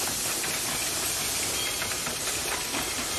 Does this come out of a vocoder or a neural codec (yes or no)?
no